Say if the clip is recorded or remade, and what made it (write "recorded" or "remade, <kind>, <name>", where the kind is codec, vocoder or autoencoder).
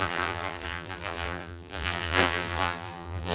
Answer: remade, vocoder, BigVGAN v2